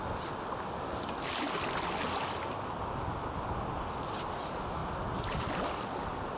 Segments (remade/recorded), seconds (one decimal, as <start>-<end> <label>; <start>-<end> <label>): 0.0-6.4 recorded